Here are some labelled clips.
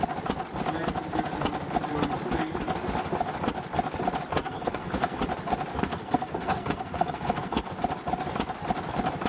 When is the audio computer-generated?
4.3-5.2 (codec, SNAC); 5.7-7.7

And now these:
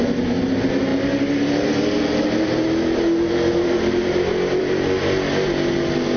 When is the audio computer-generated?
none

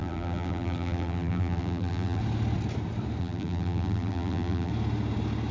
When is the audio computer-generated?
0.0-2.2 (vocoder, BigVGAN v2); 3.2-4.7

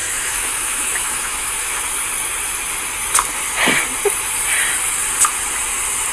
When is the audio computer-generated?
0.0-1.8 (autoencoder, DAC-VAE)

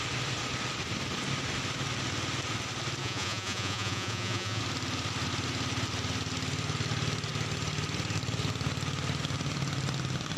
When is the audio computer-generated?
3.0-4.6 (vocoder, Vocos)

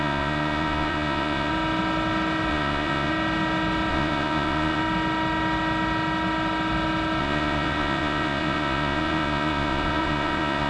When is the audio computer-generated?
0.0-1.5 (vocoder, Vocos); 2.5-3.1; 3.9-4.8; 7.2-10.7

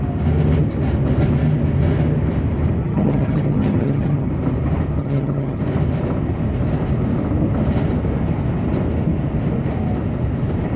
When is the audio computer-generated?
2.8-4.3 (vocoder, HiFi-GAN); 5.0-5.6